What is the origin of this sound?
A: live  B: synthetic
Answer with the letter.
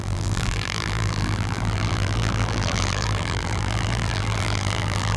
B